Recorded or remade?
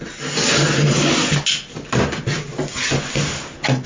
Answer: recorded